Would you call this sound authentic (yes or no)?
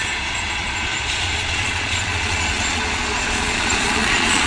no